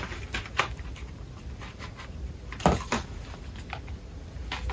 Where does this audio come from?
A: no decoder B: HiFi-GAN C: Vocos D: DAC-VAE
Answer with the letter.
A